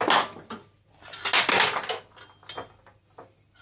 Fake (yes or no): no